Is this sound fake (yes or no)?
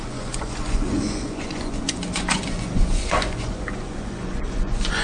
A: yes